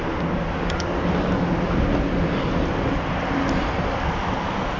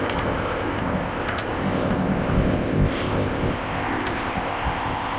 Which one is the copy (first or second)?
second